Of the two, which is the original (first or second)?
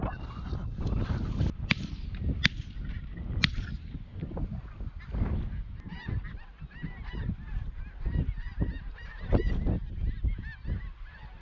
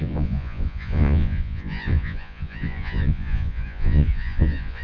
first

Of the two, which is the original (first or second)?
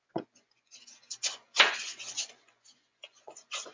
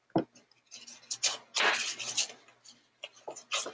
second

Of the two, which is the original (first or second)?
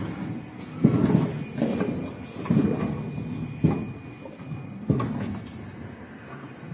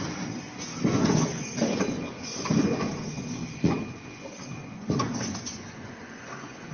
first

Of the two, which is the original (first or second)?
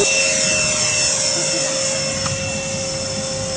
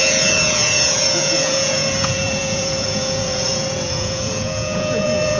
first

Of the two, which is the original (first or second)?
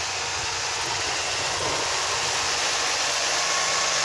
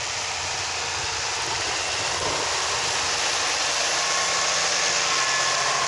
second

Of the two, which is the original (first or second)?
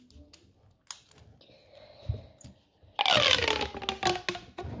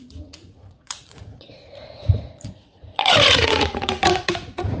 first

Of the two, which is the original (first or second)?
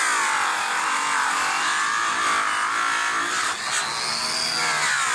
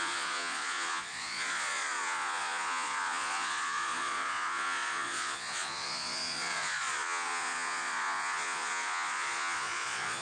first